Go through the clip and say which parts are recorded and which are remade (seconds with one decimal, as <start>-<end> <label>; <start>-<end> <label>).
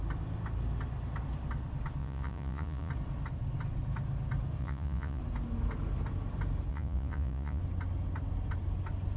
0.0-2.0 recorded; 2.0-2.9 remade; 2.9-4.6 recorded; 4.6-5.2 remade; 5.2-6.7 recorded; 6.7-7.6 remade; 7.6-9.2 recorded